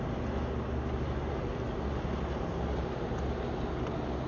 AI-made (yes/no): no